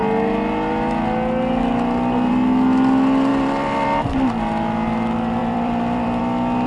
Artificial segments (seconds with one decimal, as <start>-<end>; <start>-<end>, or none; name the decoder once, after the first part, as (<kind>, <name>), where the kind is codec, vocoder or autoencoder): 3.3-4.1 (vocoder, BigVGAN v2); 5.4-6.2